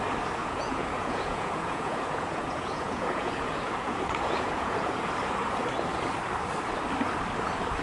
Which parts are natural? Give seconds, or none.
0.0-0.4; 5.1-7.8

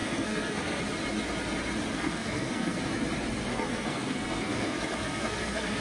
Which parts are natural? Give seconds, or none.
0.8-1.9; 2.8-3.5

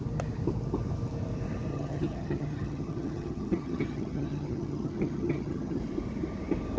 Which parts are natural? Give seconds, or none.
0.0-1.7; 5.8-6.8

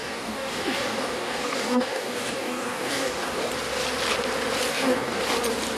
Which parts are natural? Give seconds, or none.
3.5-4.7; 5.2-5.8

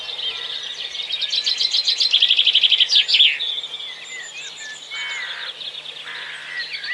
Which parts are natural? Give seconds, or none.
0.0-6.9

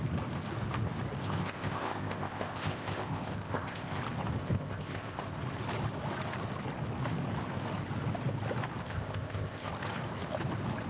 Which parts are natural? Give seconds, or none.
0.0-1.2; 4.0-4.4; 5.2-8.8; 9.7-10.9

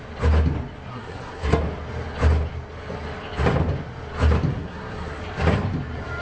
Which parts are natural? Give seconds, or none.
0.0-0.9; 1.6-4.5; 5.2-6.2

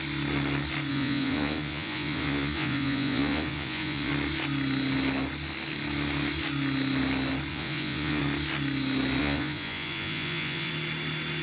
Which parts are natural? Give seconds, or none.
0.0-0.9; 4.1-7.5; 8.2-9.2; 10.7-11.4